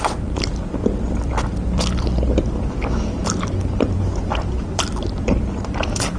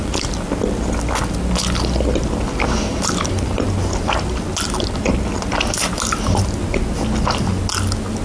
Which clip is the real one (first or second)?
second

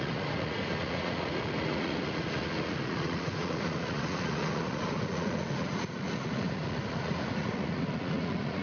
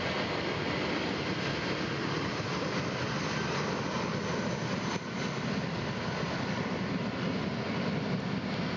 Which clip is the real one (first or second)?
second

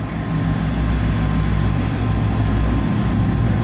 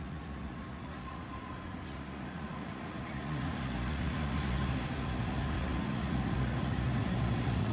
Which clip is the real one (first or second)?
first